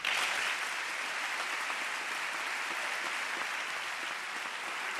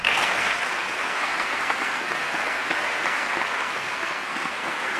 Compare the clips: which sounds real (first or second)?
first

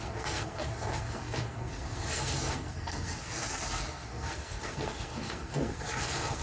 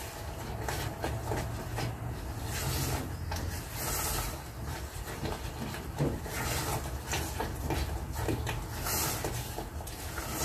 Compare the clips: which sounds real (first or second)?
second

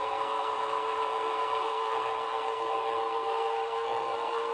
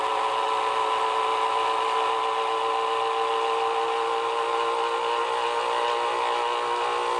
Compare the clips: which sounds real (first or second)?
second